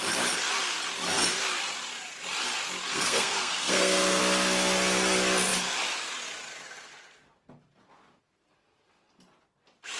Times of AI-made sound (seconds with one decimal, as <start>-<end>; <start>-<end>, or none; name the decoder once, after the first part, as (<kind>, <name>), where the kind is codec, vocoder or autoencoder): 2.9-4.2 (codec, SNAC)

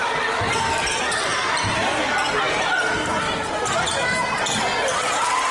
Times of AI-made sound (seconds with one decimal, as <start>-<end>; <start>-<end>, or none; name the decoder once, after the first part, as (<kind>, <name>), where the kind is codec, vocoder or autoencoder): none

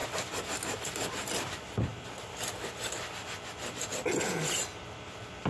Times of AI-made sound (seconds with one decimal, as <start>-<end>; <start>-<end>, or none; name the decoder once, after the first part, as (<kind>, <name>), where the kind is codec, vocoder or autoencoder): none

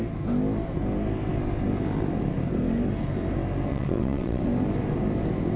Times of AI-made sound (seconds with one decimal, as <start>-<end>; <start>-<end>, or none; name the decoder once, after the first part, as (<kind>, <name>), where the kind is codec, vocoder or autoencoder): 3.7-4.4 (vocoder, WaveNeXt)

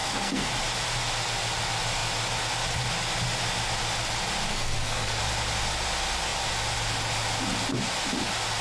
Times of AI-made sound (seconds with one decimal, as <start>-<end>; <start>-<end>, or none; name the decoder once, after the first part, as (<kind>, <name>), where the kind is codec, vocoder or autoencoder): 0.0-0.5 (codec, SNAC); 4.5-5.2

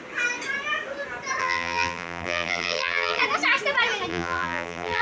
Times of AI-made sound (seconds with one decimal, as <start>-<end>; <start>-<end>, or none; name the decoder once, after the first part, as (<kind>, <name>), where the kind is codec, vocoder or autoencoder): 1.4-3.2 (vocoder, BigVGAN v2); 4.1-5.0

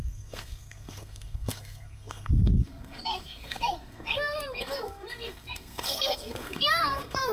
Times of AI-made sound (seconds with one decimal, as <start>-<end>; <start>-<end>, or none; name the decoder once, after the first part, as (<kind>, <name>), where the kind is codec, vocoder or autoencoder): 0.0-7.3 (codec, SNAC)